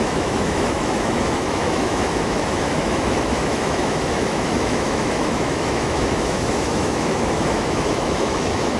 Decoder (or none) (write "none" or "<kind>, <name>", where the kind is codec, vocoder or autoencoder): autoencoder, DAC-VAE